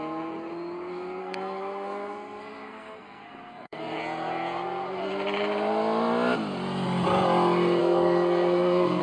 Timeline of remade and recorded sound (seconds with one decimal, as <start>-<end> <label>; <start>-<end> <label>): 0.0-1.2 recorded; 1.2-4.0 remade; 4.0-7.8 recorded; 7.8-9.0 remade